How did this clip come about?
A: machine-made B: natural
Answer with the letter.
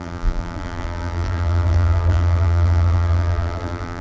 A